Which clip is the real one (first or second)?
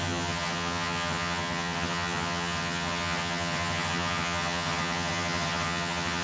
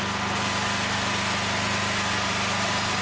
second